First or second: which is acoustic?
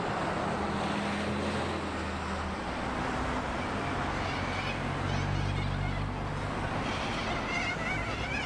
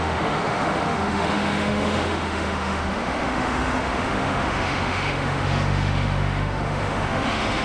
first